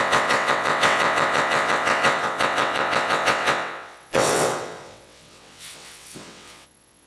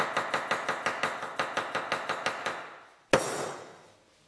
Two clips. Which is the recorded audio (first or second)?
second